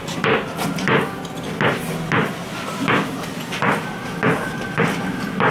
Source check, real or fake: real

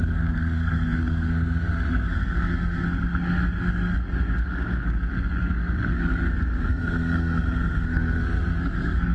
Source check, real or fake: fake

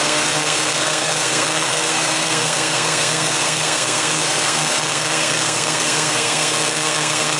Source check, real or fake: fake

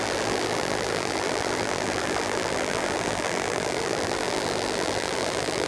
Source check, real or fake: fake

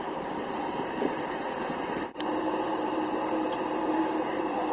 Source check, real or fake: fake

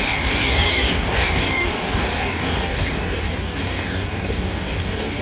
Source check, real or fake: fake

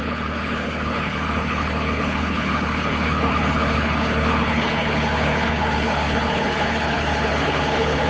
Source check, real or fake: fake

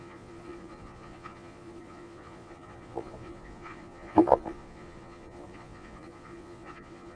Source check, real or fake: fake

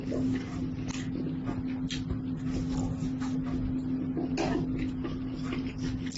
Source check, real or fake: real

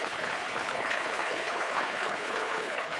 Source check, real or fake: fake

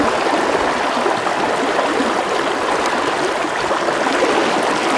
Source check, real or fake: real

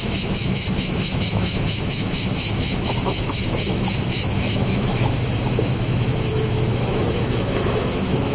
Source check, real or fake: fake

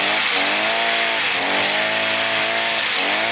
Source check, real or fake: real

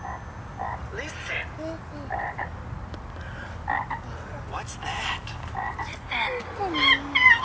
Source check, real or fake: real